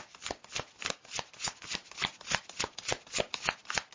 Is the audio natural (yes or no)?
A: yes